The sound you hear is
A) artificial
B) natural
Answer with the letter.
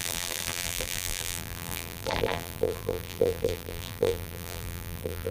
A